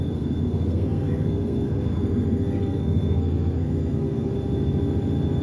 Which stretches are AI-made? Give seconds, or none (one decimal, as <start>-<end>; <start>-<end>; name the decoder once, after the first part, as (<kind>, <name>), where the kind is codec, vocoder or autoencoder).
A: 0.0-4.3 (codec, SNAC)